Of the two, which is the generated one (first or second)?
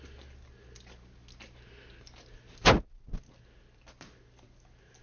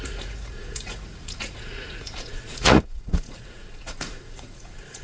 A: second